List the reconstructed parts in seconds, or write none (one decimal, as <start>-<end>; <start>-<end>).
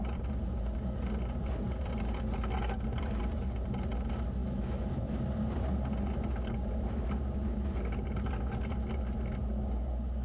4.4-5.2